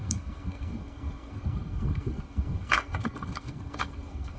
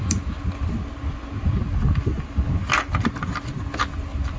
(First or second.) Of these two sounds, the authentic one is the second